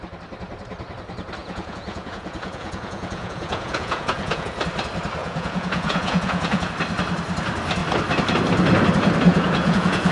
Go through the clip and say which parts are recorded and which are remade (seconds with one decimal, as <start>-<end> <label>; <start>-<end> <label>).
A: 0.0-1.4 recorded; 1.4-4.6 remade; 4.6-5.2 recorded; 5.2-6.7 remade; 6.7-9.3 recorded; 9.3-10.1 remade